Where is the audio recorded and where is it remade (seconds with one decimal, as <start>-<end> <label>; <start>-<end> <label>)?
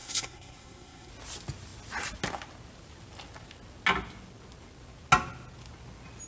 0.0-1.1 remade; 1.1-6.3 recorded